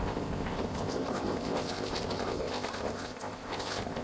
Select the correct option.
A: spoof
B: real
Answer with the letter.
A